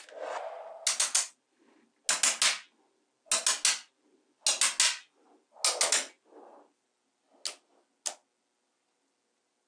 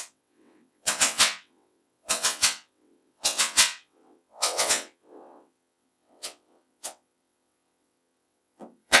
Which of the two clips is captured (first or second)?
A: first